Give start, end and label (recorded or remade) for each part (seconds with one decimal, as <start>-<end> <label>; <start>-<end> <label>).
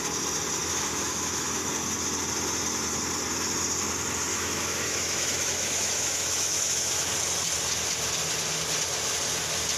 0.0-0.6 recorded; 0.6-1.7 remade; 1.7-4.3 recorded; 4.3-7.1 remade; 7.1-9.8 recorded